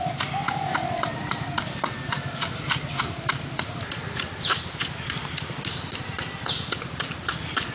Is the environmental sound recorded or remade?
recorded